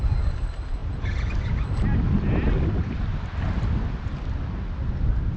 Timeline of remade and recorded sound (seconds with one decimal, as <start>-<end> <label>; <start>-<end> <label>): 0.0-5.4 recorded